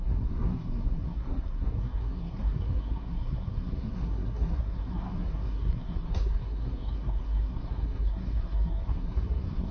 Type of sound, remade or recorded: remade